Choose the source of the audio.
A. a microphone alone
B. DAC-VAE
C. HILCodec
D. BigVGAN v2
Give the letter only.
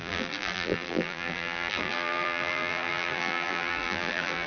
D